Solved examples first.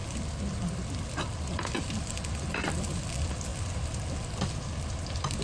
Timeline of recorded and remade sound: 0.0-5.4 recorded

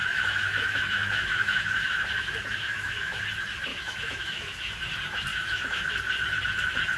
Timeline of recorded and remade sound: 0.0-3.2 remade; 3.2-3.7 recorded; 3.7-4.8 remade; 4.8-5.3 recorded; 5.3-5.9 remade; 5.9-7.0 recorded

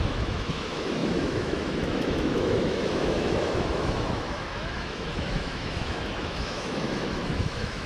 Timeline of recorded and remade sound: 0.0-7.9 remade

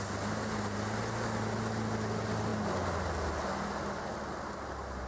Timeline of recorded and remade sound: 0.0-5.1 recorded

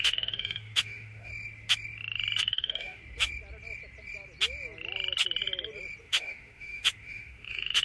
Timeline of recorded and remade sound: 0.0-1.3 remade; 1.3-2.4 recorded; 2.4-3.0 remade; 3.0-6.0 recorded; 6.0-7.8 remade

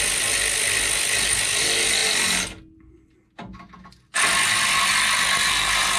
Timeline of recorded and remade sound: 0.0-6.0 recorded

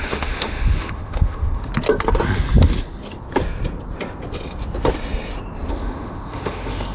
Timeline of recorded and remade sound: 0.0-1.6 remade; 1.6-5.7 recorded; 5.7-6.9 remade

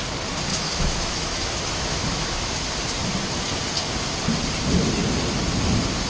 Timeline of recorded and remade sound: 0.0-0.5 recorded; 0.5-2.5 remade; 2.5-6.1 recorded